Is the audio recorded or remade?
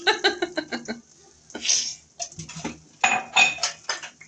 recorded